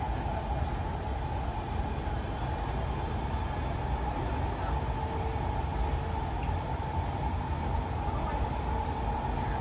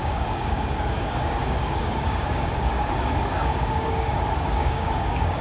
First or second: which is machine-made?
second